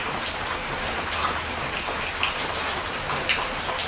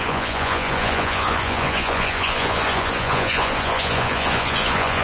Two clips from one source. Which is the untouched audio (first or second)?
first